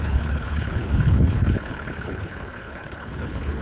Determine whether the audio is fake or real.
fake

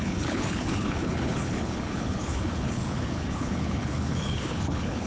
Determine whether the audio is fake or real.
fake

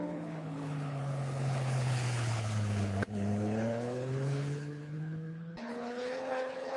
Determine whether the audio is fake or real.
fake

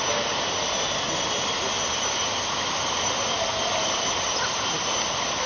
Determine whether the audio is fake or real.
real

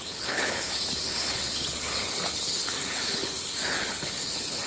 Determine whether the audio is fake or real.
fake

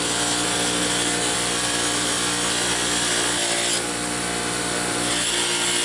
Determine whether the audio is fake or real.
real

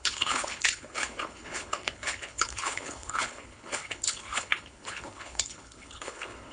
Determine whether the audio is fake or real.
fake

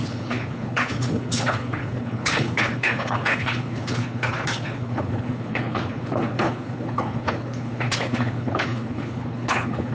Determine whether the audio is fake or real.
fake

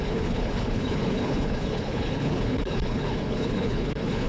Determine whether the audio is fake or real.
fake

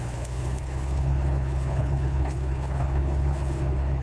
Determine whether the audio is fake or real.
fake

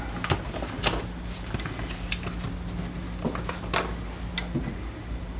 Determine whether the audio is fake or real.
real